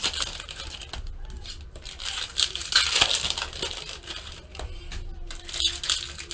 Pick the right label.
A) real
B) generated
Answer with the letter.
A